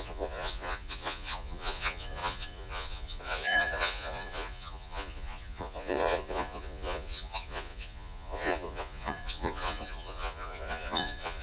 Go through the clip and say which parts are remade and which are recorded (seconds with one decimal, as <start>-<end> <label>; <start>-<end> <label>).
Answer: 0.0-11.4 remade